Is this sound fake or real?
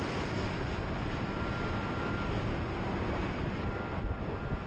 real